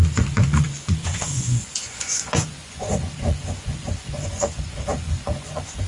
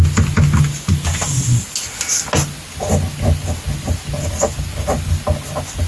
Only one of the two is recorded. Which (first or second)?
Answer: second